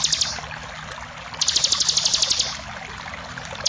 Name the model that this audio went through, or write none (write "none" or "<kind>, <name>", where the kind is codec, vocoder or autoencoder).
none